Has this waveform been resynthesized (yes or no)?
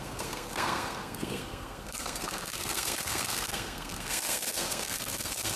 yes